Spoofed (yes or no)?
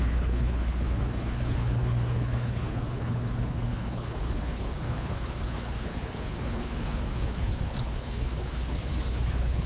yes